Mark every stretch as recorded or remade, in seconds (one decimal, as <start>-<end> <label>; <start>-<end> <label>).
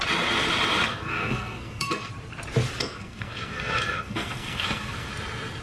0.0-0.9 recorded; 0.9-2.1 remade; 2.1-2.8 recorded; 2.8-5.1 remade; 5.1-5.6 recorded